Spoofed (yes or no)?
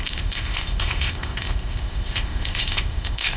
yes